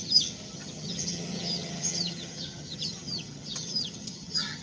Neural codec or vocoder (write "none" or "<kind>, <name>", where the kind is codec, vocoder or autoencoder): vocoder, HiFi-GAN